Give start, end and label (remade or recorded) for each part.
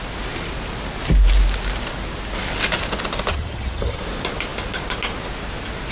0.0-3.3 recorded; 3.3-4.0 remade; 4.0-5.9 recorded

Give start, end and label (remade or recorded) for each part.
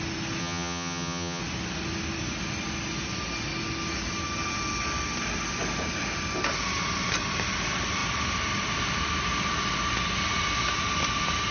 0.0-0.4 recorded; 0.4-1.4 remade; 1.4-11.5 recorded